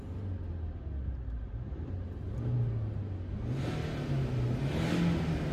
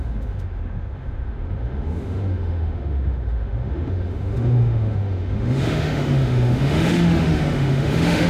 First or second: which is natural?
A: first